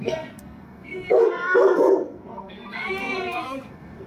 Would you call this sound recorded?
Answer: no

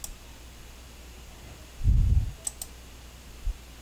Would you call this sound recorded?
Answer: yes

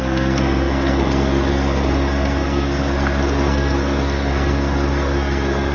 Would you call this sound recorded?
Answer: no